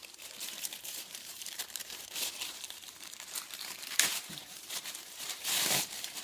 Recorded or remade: remade